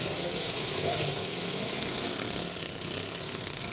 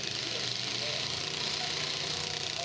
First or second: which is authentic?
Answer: second